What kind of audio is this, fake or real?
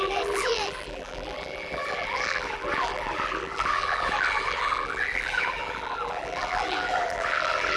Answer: fake